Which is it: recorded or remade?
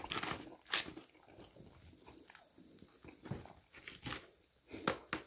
recorded